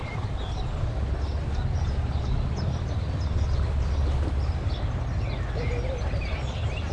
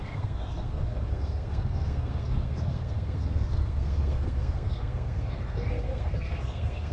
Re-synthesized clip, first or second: second